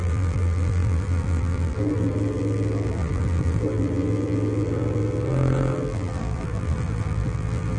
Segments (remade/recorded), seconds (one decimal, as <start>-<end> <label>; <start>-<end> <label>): 0.0-7.8 remade